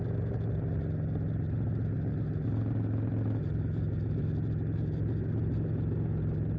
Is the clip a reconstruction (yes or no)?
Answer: no